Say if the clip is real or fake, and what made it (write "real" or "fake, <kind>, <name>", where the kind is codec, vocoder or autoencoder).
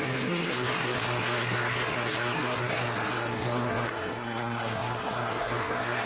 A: fake, codec, SNAC